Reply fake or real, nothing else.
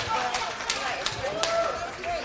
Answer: real